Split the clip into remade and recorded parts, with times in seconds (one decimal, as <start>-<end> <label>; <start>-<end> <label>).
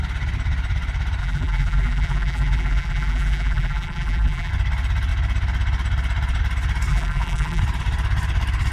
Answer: 0.0-1.2 recorded; 1.2-4.5 remade; 4.5-6.9 recorded; 6.9-7.6 remade; 7.6-8.7 recorded